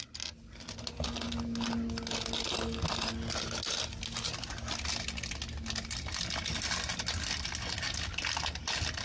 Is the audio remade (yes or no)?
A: no